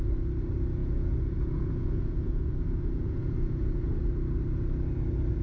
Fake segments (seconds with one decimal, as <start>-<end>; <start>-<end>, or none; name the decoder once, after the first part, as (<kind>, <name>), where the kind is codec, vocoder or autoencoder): 0.8-4.0 (vocoder, Vocos)

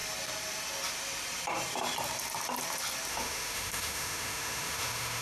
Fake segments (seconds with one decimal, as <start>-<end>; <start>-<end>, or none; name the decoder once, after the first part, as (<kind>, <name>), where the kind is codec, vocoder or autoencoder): 3.1-5.2 (autoencoder, DAC-VAE)